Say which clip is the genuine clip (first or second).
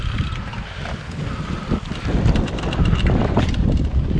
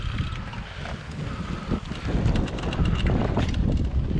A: second